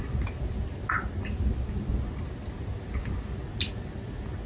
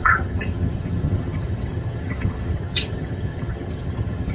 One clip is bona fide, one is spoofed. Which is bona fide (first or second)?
first